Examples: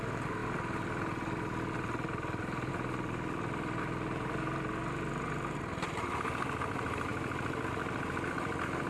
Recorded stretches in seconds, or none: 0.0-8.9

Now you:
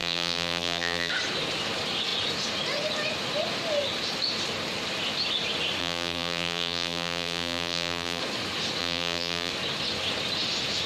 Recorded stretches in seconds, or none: 1.1-5.8; 8.2-8.8; 9.5-10.9